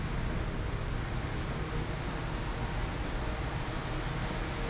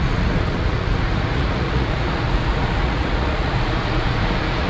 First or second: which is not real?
second